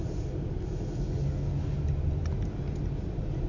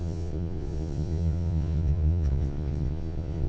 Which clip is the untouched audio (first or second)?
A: first